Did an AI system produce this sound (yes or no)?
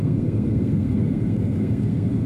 yes